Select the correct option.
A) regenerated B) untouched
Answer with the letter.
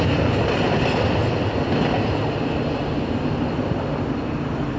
B